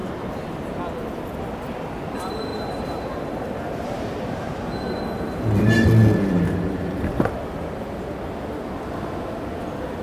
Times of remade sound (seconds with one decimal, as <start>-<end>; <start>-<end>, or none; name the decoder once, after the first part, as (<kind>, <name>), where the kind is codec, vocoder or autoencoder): 2.5-5.0 (vocoder, BigVGAN v2)